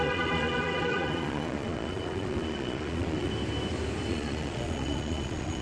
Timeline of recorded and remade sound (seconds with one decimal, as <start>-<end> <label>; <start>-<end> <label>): 0.0-3.3 remade; 3.3-4.1 recorded; 4.1-5.6 remade